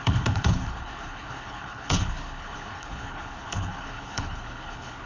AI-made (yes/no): yes